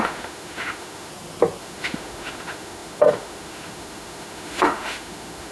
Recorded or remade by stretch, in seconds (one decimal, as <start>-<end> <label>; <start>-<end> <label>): 0.0-1.1 remade; 1.1-1.6 recorded; 1.6-5.5 remade